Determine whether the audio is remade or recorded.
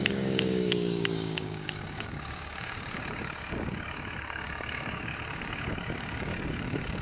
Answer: remade